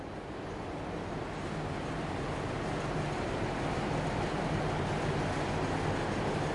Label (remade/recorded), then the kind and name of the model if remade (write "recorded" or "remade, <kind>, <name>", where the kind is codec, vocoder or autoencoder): recorded